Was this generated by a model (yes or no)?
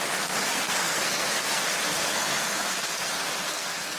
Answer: yes